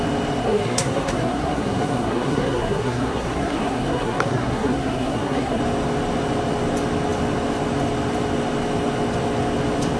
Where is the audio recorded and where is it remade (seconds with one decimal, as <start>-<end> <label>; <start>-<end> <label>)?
0.0-0.4 recorded; 0.4-5.6 remade; 5.6-10.0 recorded